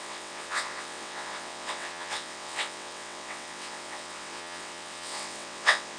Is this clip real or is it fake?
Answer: fake